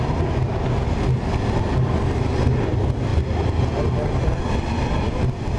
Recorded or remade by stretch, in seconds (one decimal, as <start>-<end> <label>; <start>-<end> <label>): 0.0-5.6 recorded